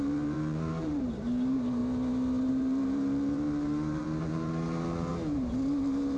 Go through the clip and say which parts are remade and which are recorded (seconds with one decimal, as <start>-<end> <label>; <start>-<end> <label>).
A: 0.0-1.8 remade; 1.8-2.5 recorded; 2.5-6.2 remade